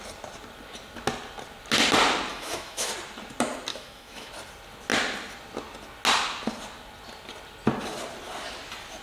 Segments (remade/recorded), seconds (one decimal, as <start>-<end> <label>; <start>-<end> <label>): 0.0-2.3 recorded; 2.3-2.9 remade; 2.9-3.7 recorded; 3.7-4.3 remade; 4.3-9.0 recorded